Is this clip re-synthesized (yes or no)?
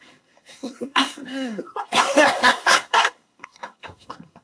yes